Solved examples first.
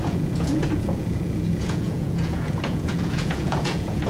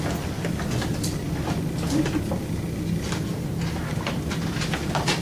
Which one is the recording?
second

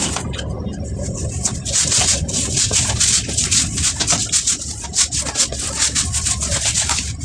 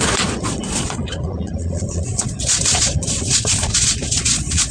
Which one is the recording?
first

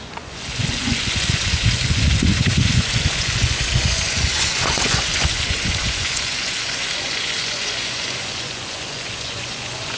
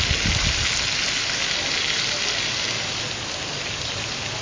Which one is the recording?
second